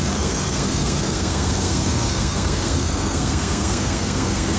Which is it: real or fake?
fake